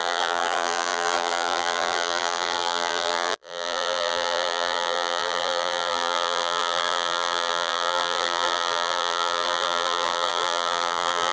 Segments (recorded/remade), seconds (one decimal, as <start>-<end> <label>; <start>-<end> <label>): 0.0-11.3 remade